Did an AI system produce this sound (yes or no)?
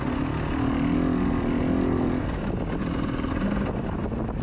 no